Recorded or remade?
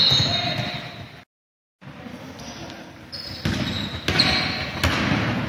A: recorded